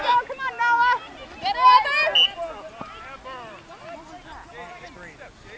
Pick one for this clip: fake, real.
real